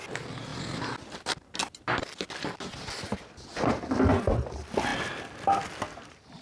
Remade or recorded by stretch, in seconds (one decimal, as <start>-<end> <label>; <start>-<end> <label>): 0.0-6.4 recorded